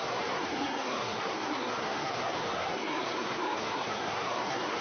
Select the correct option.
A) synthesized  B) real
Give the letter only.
A